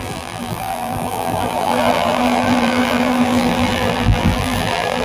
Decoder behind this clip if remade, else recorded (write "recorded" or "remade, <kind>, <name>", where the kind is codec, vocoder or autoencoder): remade, vocoder, BigVGAN v2